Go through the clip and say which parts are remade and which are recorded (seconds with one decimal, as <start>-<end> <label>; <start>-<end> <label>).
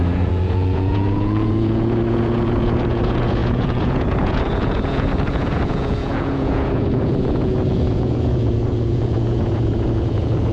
0.0-10.5 remade